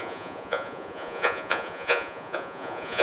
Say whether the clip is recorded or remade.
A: remade